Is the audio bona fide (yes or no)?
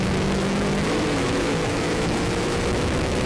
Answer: no